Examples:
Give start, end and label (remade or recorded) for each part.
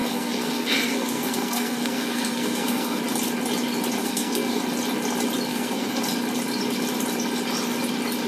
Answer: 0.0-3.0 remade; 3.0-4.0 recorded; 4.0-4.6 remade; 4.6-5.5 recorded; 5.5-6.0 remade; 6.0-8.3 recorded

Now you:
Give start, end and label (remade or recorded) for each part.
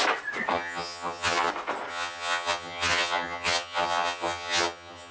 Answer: 0.0-0.5 recorded; 0.5-1.5 remade; 1.5-1.9 recorded; 1.9-5.1 remade